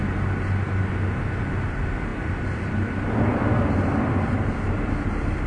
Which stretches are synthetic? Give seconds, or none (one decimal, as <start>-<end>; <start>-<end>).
1.1-5.5